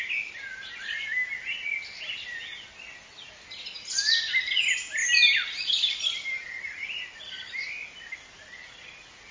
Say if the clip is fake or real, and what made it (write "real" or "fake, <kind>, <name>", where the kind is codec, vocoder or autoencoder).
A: real